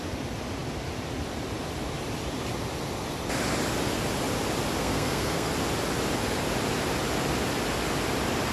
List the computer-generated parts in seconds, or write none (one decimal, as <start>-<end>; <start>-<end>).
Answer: 4.8-5.5